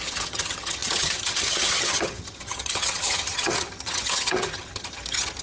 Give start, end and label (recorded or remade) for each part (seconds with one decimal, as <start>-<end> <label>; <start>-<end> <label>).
0.0-5.4 remade